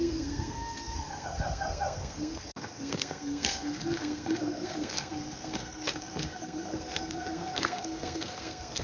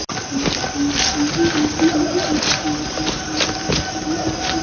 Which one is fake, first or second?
first